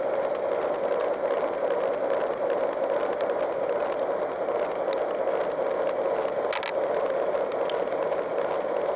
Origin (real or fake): real